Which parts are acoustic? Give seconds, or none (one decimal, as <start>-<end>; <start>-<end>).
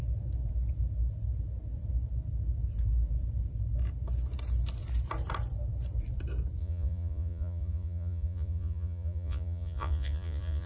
0.0-6.6